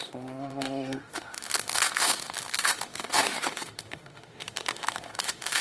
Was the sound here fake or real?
fake